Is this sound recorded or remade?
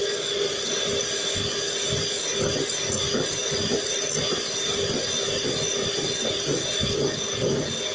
recorded